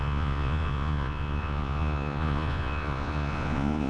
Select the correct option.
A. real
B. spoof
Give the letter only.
B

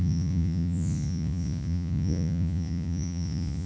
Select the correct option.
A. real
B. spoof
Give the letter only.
B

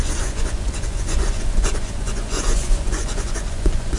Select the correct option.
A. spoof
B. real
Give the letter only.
A